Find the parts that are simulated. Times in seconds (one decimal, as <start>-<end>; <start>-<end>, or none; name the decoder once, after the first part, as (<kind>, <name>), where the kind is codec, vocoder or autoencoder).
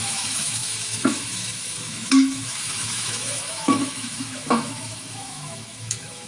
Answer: 0.0-6.3 (autoencoder, DAC-VAE)